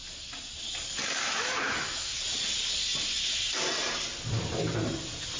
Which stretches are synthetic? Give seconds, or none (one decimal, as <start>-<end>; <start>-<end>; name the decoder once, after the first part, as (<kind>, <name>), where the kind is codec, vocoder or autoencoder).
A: 1.2-2.2 (autoencoder, DAC-VAE)